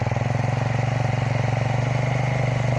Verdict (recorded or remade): recorded